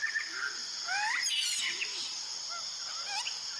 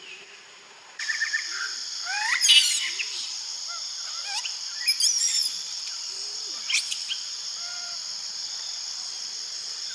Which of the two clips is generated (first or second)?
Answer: second